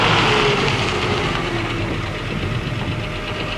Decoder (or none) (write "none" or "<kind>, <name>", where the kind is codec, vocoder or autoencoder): none